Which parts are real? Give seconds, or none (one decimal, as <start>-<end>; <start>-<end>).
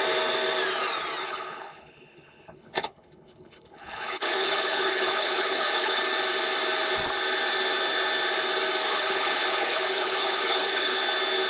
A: 0.0-1.2; 6.0-8.9; 11.0-11.5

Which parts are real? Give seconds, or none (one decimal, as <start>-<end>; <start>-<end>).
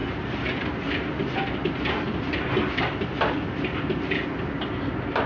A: 0.0-5.3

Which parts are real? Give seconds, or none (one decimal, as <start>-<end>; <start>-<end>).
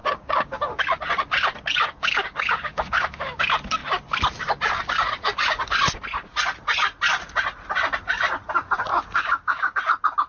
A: 0.8-2.0; 3.4-8.9; 9.8-10.3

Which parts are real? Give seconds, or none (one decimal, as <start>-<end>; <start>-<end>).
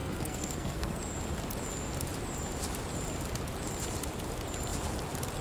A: 1.0-5.4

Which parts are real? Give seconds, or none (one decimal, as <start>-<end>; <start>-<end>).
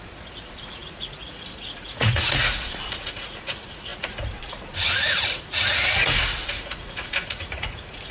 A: none